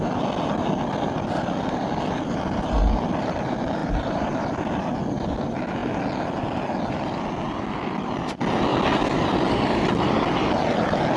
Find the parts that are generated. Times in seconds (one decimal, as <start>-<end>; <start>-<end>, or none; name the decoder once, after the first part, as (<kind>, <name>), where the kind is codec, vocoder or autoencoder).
3.8-4.9 (vocoder, BigVGAN v2); 8.7-10.5